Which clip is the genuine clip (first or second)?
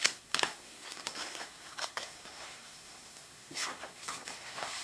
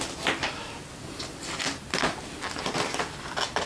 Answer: second